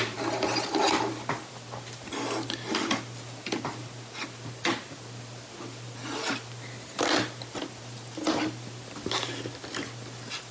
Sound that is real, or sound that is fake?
real